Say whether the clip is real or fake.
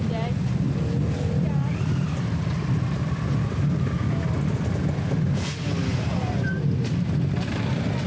real